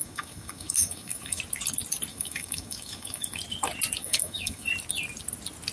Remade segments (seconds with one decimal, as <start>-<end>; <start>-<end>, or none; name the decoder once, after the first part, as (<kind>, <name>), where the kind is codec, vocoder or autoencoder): 0.0-1.4 (autoencoder, DAC-VAE); 2.1-3.4; 4.0-4.7